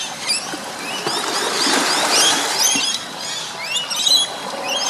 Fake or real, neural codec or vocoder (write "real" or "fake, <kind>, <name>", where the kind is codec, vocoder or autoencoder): real